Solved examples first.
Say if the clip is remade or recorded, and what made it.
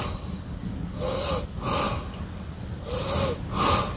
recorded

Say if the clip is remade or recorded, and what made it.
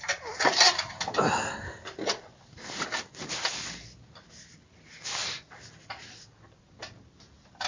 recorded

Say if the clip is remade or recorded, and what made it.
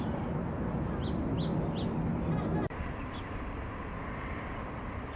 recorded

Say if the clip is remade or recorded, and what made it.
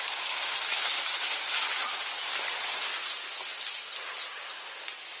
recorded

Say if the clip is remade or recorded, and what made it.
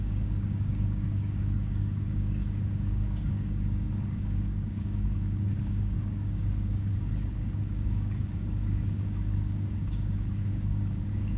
remade, codec, DAC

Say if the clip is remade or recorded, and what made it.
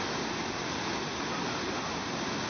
recorded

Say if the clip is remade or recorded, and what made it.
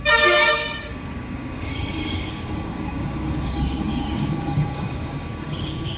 remade, codec, DAC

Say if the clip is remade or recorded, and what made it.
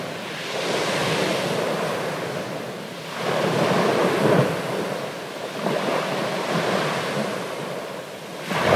recorded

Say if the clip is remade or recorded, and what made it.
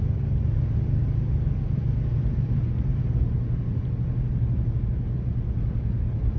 recorded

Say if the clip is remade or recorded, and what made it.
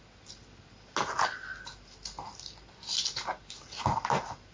recorded